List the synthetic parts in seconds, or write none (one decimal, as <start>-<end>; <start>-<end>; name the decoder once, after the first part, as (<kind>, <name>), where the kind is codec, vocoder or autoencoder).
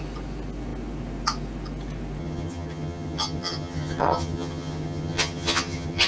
2.2-6.1 (vocoder, HiFi-GAN)